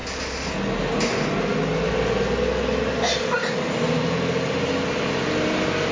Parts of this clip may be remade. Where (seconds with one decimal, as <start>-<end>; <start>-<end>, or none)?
none